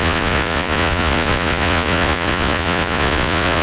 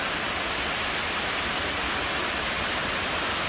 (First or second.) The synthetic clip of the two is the first